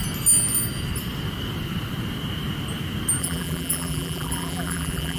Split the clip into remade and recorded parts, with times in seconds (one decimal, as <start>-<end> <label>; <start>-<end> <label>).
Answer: 0.0-3.2 recorded; 3.2-5.2 remade